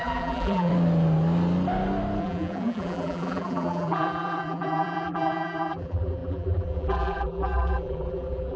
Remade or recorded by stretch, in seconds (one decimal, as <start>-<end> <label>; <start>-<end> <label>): 0.0-0.7 remade; 0.7-2.2 recorded; 2.2-8.6 remade